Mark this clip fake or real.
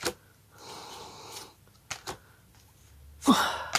real